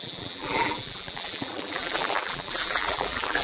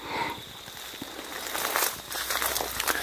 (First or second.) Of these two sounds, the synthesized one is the first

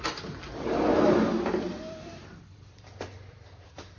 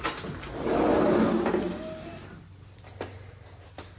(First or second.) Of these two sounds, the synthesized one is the first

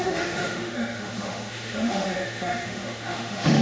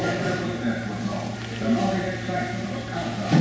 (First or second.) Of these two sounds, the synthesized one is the first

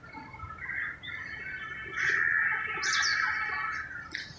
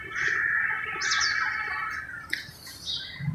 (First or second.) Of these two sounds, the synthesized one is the second